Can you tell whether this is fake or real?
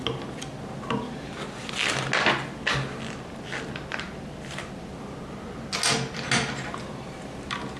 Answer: real